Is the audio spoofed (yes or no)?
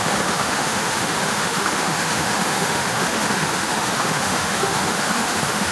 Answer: yes